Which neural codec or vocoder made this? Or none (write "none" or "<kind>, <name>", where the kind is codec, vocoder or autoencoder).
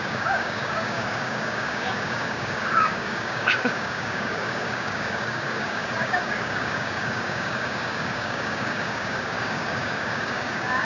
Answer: codec, DAC